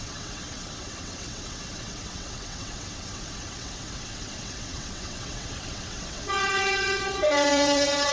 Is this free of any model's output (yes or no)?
no